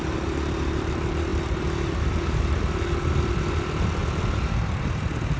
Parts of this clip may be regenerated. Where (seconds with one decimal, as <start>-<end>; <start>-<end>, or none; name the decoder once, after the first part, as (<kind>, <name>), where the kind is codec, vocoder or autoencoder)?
none